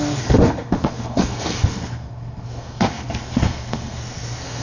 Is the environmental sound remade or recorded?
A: remade